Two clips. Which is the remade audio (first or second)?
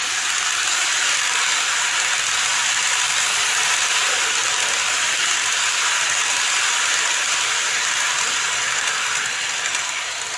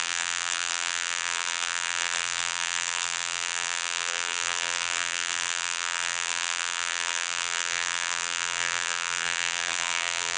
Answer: second